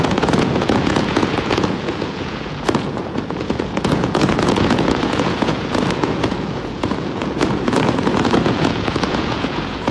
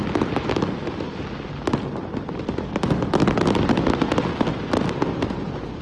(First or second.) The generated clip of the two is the first